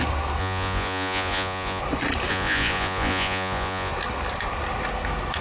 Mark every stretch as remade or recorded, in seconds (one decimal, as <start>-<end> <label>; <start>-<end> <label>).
0.0-0.4 recorded; 0.4-1.8 remade; 1.8-2.3 recorded; 2.3-3.9 remade; 3.9-5.4 recorded